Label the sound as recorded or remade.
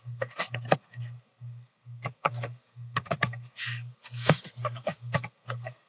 remade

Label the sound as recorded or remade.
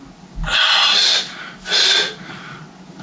recorded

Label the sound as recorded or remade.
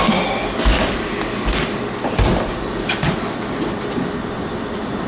recorded